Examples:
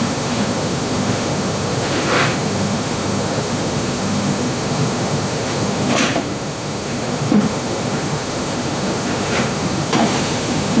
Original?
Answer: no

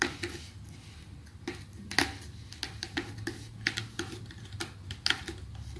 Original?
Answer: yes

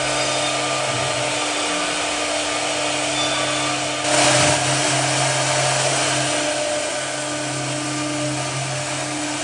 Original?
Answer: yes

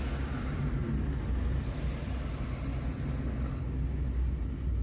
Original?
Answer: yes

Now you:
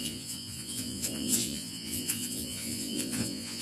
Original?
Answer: no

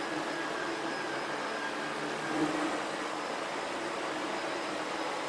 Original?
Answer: yes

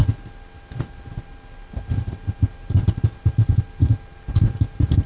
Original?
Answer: yes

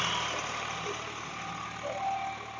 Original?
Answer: yes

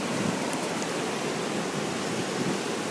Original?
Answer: yes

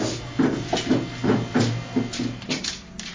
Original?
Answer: yes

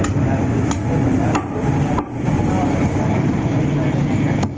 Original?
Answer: yes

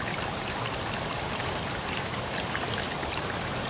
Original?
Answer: yes